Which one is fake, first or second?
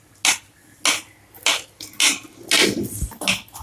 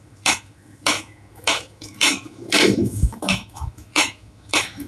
second